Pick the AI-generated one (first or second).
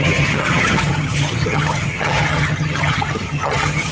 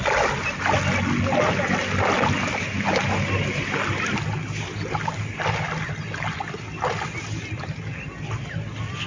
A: first